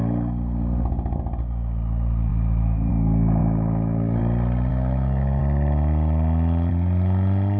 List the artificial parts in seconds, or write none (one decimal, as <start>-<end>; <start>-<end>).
2.3-2.9; 3.4-4.2; 4.7-5.4